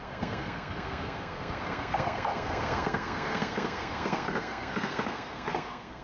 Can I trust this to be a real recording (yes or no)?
no